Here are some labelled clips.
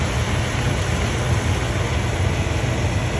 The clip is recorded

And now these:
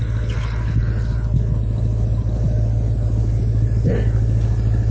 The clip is recorded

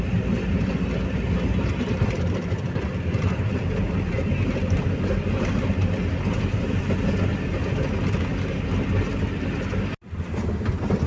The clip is recorded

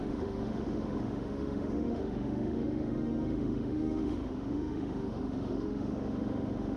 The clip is remade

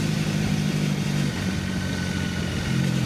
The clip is recorded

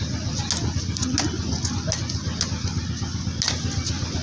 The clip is recorded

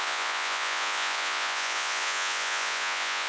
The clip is remade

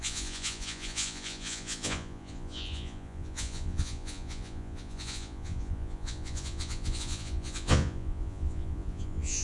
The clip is remade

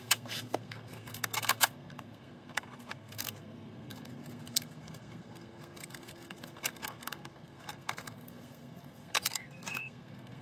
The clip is remade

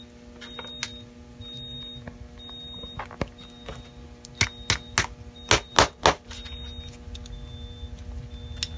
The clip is recorded